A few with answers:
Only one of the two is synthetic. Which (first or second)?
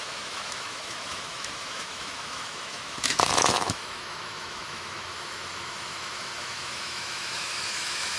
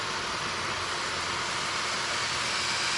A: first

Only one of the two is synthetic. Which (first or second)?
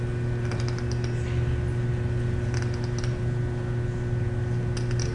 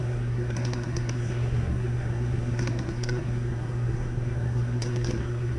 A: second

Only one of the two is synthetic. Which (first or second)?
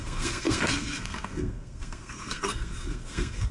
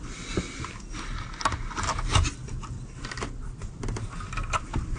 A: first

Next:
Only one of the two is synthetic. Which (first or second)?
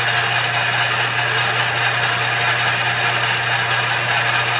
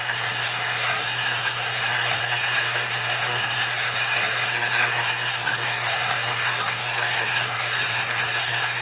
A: second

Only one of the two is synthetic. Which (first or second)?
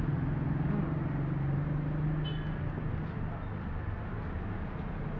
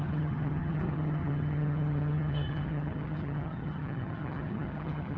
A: second